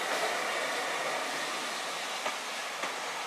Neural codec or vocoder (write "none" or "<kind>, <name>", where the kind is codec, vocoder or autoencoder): none